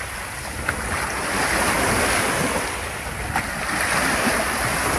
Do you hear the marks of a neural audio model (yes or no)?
no